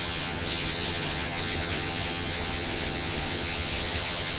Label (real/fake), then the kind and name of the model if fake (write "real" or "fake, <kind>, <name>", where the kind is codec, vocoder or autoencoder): fake, vocoder, HiFi-GAN